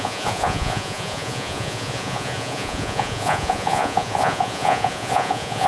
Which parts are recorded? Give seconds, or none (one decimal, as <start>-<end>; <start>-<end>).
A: none